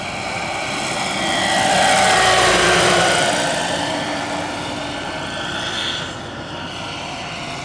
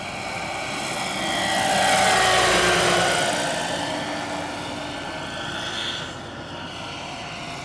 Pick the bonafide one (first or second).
second